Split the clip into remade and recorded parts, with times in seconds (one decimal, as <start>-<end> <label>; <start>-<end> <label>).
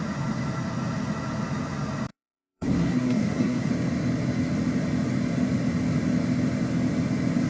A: 0.0-2.1 recorded; 2.1-3.7 remade; 3.7-7.5 recorded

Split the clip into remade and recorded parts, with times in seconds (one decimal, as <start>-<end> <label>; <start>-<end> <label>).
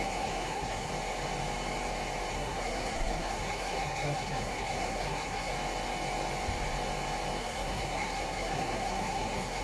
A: 0.0-0.9 remade; 0.9-2.3 recorded; 2.3-5.5 remade; 5.5-7.4 recorded; 7.4-9.6 remade